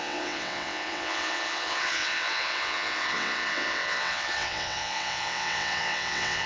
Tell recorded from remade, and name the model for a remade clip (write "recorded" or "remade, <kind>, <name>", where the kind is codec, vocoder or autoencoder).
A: remade, vocoder, WaveNeXt